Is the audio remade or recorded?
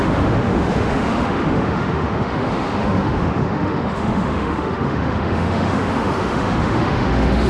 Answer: remade